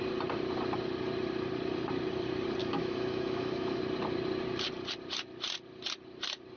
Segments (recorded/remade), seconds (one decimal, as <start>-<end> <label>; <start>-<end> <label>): 0.0-2.6 recorded; 2.6-3.8 remade; 3.8-6.6 recorded